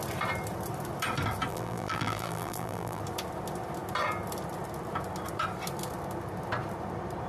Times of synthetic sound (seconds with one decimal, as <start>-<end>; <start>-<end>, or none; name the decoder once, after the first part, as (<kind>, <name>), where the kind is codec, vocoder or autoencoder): 1.5-3.0 (vocoder, BigVGAN v2)

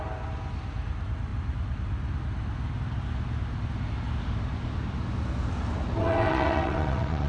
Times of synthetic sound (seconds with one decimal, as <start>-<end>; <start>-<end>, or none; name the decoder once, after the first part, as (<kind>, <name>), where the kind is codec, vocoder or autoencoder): 6.0-7.3 (vocoder, WaveNeXt)

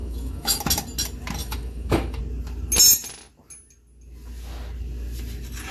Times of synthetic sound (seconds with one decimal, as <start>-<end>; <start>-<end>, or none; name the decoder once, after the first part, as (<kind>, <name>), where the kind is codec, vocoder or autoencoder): 0.0-0.6 (autoencoder, DAC-VAE); 1.4-2.2

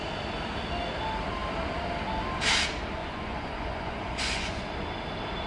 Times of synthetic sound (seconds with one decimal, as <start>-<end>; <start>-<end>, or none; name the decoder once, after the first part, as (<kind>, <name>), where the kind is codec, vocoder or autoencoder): 3.0-4.6 (vocoder, Vocos)